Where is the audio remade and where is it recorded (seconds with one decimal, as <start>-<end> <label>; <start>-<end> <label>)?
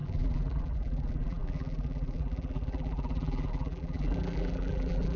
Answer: 0.0-5.2 remade